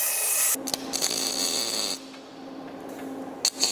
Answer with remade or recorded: recorded